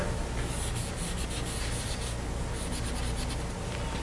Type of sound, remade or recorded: recorded